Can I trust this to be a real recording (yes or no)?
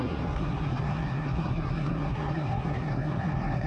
no